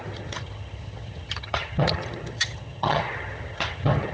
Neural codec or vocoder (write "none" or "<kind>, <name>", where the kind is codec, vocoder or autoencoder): vocoder, HiFi-GAN